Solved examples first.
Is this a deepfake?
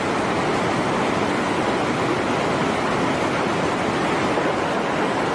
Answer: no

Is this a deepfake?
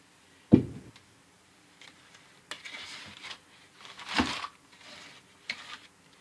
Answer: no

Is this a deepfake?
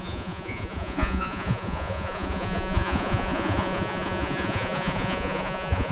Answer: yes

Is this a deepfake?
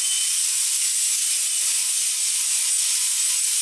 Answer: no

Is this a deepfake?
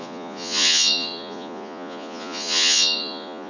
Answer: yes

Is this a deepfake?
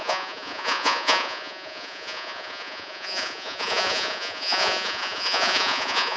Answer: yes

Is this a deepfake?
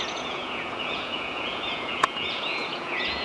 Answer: yes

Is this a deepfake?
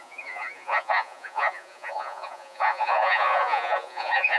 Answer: yes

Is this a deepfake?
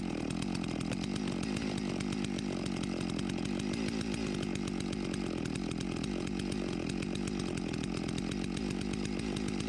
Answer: no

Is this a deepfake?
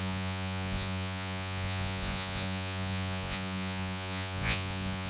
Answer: yes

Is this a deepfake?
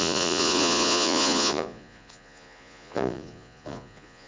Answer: yes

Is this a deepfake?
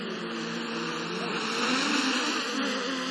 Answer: no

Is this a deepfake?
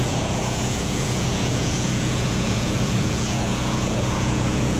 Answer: yes